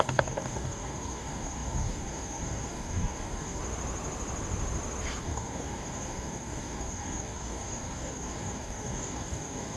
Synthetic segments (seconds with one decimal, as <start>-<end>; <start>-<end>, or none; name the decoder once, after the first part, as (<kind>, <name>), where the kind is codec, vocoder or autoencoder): 0.0-3.6 (codec, DAC); 5.2-9.8